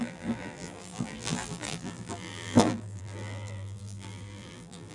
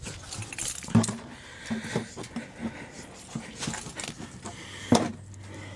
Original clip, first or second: second